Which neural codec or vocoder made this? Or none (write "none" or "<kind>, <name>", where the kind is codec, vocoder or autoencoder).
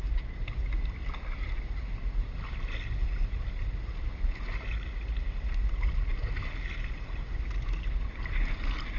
none